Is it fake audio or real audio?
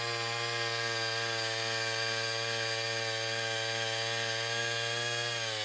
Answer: real